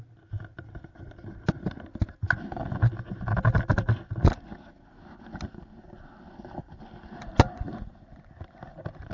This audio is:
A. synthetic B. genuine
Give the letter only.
B